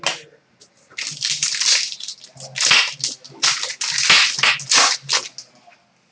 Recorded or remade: recorded